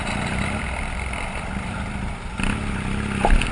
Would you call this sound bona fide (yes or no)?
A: no